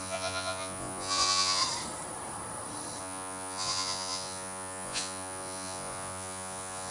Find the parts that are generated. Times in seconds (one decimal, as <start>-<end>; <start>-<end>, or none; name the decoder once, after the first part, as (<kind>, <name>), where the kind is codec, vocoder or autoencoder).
0.0-1.6 (vocoder, Vocos); 3.0-6.9